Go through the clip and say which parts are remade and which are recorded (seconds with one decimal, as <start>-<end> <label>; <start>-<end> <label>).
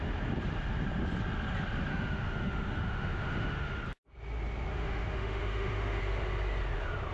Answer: 0.0-1.9 recorded; 1.9-3.8 remade; 3.8-4.7 recorded; 4.7-6.0 remade; 6.0-7.1 recorded